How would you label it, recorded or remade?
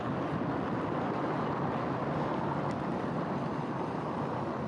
recorded